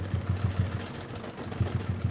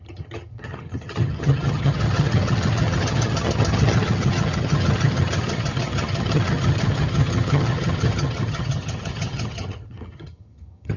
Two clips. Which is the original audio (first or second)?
first